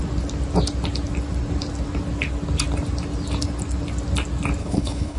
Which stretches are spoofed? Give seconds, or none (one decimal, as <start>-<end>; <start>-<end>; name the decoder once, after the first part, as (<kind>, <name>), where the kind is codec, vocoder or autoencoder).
4.6-5.2 (codec, HILCodec)